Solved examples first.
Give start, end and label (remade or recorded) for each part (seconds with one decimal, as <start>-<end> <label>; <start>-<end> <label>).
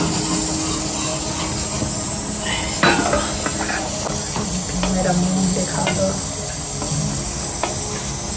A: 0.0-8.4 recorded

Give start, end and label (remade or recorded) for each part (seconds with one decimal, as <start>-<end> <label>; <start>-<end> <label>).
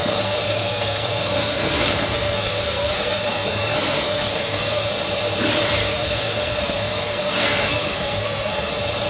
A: 0.0-4.9 remade; 4.9-5.8 recorded; 5.8-8.7 remade; 8.7-9.1 recorded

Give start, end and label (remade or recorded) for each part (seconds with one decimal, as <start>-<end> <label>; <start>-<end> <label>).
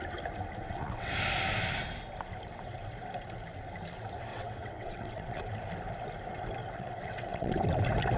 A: 0.0-0.6 recorded; 0.6-1.1 remade; 1.1-4.3 recorded; 4.3-5.4 remade; 5.4-6.6 recorded; 6.6-7.5 remade; 7.5-8.2 recorded